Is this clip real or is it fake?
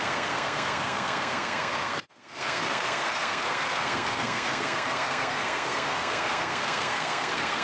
fake